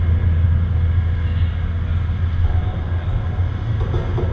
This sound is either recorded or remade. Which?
recorded